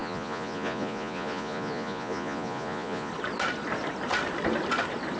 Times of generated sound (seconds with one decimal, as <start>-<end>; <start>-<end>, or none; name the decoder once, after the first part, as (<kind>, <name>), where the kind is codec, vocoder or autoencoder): 0.0-3.1 (vocoder, Vocos)